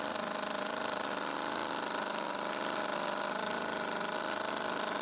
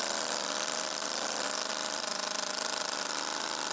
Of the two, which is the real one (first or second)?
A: first